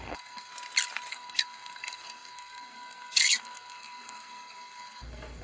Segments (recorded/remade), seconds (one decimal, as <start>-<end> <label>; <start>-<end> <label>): 0.0-0.5 remade; 0.5-1.1 recorded; 1.1-5.4 remade